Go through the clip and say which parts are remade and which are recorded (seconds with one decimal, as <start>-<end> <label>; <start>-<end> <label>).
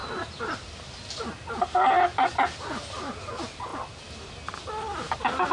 0.0-3.1 remade; 3.1-3.7 recorded; 3.7-4.3 remade; 4.3-5.5 recorded